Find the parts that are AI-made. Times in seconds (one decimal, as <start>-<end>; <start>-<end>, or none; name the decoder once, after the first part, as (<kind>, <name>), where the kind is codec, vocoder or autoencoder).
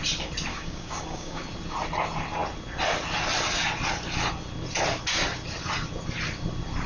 0.5-1.4 (codec, DAC)